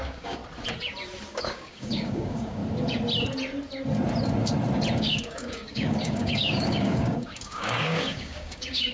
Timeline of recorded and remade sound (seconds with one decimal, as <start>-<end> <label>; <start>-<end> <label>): 0.0-0.4 remade; 0.4-1.3 recorded; 1.3-2.6 remade; 2.6-5.0 recorded; 5.0-8.9 remade